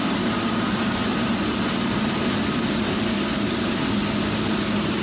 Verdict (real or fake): real